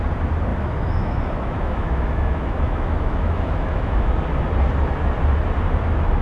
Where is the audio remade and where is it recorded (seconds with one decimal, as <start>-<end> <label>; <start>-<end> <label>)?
0.0-0.5 recorded; 0.5-4.1 remade; 4.1-6.2 recorded